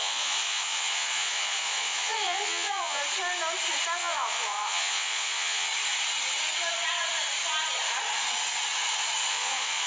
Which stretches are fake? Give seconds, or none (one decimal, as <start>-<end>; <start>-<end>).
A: 0.0-3.0; 4.0-5.7; 9.3-9.9